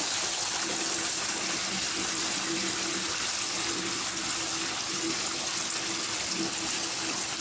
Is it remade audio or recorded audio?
recorded